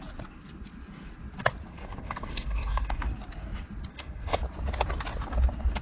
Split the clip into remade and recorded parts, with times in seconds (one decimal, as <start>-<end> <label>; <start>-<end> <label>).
0.0-1.7 recorded; 1.7-3.0 remade; 3.0-3.9 recorded; 3.9-4.4 remade; 4.4-5.8 recorded